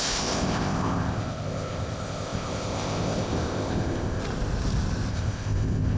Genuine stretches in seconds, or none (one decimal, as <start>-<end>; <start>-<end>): 4.2-5.1